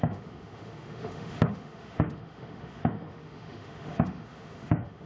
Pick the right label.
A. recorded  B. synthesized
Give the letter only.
B